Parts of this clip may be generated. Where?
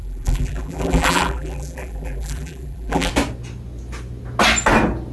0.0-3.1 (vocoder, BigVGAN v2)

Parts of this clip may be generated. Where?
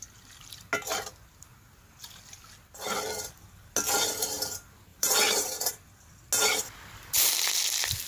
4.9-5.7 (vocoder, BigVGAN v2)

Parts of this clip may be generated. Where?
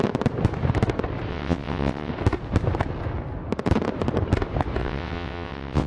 1.3-2.1 (vocoder, WaveNeXt); 4.8-5.9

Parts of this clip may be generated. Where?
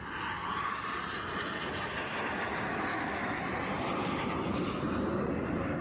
2.9-3.4 (autoencoder, DAC-VAE)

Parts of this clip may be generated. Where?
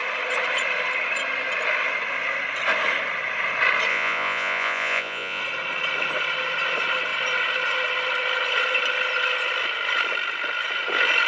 3.9-5.4 (vocoder, Vocos)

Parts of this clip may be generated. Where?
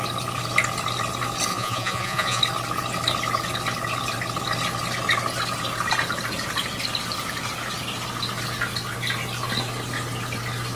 1.5-2.4 (vocoder, Vocos)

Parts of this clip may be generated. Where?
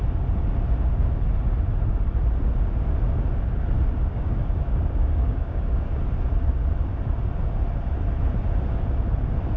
4.1-5.9 (codec, DAC)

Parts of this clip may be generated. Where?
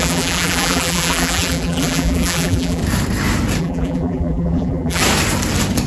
0.0-2.8 (vocoder, BigVGAN v2); 3.6-5.0